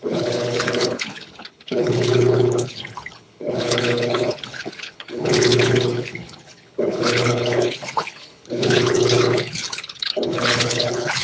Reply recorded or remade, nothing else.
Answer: remade